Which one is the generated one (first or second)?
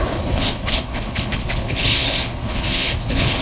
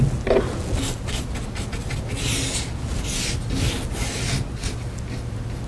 first